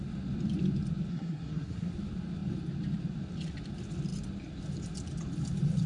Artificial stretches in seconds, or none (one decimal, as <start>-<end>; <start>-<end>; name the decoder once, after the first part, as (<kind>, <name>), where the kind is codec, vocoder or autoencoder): 1.1-1.9 (codec, SNAC)